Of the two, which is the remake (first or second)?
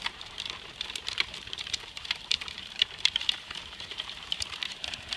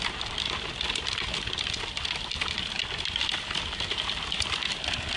first